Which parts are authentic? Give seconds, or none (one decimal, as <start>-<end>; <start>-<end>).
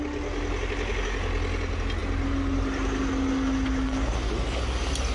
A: 0.0-5.1